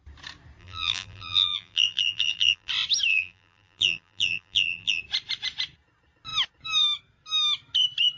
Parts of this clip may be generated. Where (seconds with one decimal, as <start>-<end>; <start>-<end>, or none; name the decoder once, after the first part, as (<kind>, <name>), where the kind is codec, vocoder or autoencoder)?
0.6-2.7 (vocoder, BigVGAN v2); 3.1-5.0